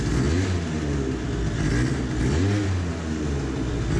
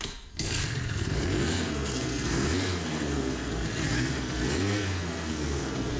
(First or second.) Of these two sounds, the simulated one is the second